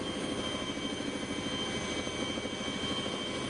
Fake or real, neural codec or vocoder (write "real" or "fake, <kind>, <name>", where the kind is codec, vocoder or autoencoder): real